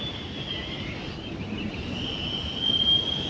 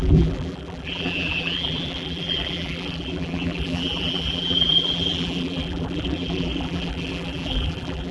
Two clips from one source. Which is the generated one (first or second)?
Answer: second